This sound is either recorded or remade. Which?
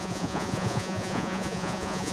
remade